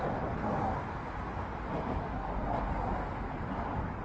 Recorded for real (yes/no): yes